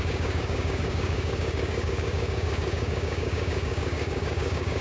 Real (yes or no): no